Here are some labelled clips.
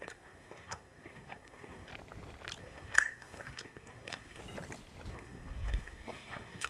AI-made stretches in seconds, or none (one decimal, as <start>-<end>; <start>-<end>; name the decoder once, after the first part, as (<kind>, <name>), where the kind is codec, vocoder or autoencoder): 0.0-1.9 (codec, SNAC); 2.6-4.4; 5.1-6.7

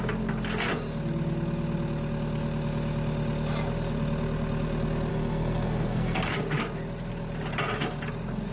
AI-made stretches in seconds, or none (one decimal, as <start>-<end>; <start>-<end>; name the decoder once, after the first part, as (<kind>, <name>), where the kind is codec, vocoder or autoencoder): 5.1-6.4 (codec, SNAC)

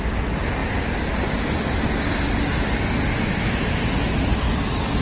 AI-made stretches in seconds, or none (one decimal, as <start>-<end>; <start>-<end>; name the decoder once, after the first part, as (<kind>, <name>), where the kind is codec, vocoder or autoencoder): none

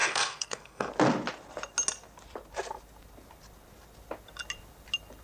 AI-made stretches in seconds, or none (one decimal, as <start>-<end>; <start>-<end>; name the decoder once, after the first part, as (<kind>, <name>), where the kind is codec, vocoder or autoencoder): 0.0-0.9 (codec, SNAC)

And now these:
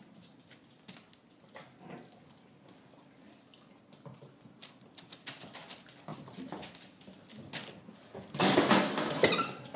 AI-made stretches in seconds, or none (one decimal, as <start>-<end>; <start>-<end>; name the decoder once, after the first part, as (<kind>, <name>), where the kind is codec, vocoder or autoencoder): none